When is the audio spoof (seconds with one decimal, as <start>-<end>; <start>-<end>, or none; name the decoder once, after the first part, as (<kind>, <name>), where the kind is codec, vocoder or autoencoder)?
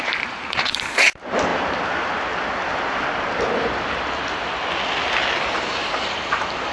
0.0-1.5 (vocoder, BigVGAN v2); 5.5-6.7